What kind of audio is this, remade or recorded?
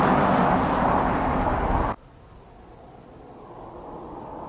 recorded